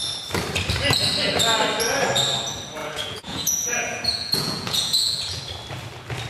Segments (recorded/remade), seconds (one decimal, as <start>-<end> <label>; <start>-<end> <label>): 0.0-2.8 recorded; 2.8-5.4 remade; 5.4-6.3 recorded